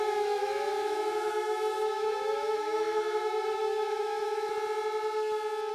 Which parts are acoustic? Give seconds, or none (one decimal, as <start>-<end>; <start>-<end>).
4.5-5.7